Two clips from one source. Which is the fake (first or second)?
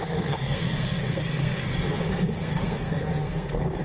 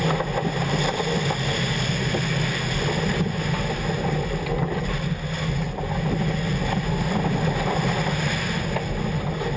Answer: first